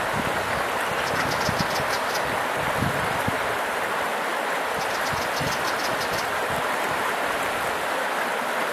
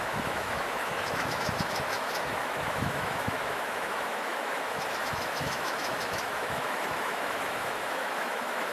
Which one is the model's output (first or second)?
second